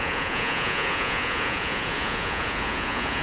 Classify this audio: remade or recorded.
remade